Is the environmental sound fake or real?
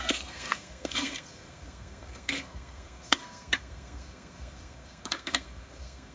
fake